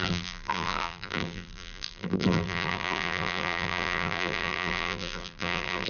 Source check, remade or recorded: remade